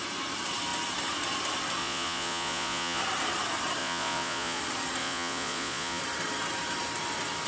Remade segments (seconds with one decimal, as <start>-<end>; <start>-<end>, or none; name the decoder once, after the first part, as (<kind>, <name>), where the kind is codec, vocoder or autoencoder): 1.8-3.0 (vocoder, Vocos); 3.8-4.6; 5.0-6.0